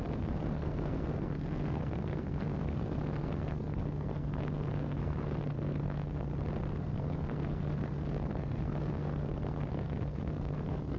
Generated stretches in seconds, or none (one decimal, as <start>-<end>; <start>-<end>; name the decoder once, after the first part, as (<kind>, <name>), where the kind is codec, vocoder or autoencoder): 0.0-6.3 (codec, SNAC); 6.8-11.0